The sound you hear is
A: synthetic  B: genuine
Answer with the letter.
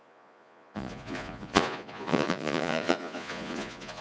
A